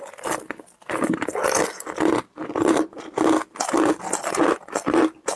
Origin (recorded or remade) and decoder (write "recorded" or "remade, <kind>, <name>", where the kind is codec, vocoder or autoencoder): recorded